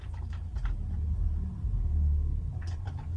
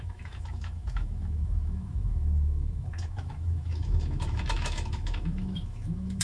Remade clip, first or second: second